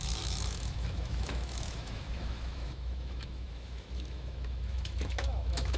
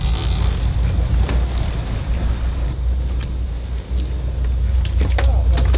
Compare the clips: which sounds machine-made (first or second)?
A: first